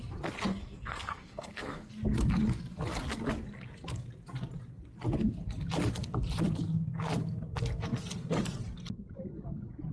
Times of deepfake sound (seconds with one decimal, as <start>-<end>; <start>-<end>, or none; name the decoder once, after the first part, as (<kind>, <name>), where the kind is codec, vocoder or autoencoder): 0.5-1.9 (codec, SNAC)